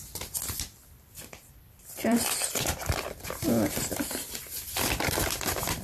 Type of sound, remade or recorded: remade